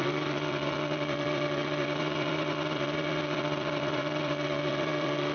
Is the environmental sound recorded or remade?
remade